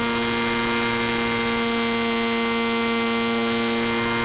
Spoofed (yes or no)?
no